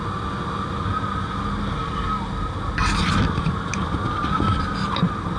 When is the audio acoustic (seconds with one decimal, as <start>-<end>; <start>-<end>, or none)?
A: 0.0-5.4